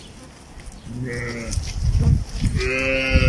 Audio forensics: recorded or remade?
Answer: recorded